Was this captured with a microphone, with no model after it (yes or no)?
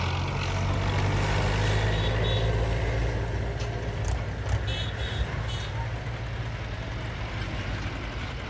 yes